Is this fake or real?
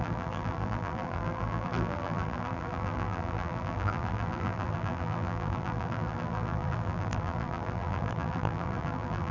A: fake